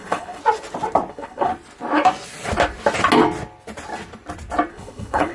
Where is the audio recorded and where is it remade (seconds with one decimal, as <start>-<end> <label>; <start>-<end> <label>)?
0.0-0.4 remade; 0.4-1.1 recorded; 1.1-1.5 remade; 1.5-4.7 recorded; 4.7-5.3 remade